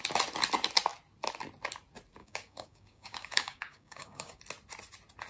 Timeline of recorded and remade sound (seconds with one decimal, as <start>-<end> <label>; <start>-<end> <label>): 0.0-2.2 recorded; 2.2-4.4 remade; 4.4-5.3 recorded